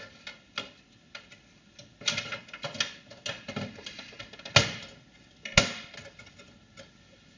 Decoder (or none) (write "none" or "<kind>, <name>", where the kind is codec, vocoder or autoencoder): none